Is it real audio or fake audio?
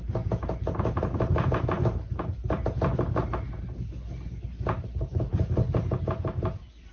real